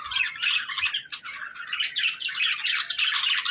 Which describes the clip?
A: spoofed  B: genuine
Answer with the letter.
B